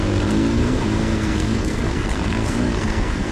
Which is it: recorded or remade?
remade